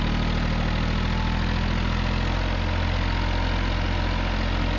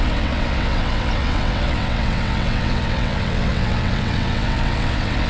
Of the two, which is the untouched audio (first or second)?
first